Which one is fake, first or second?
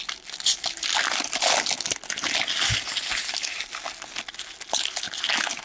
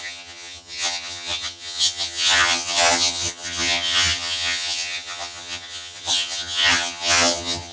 second